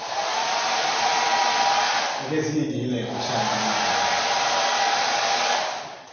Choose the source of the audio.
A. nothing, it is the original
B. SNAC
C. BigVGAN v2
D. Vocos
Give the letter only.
A